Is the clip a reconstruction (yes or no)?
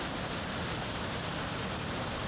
no